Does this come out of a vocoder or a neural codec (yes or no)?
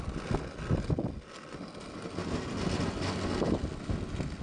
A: no